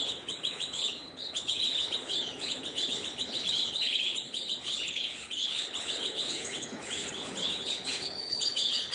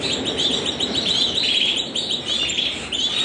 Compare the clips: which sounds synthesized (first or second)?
first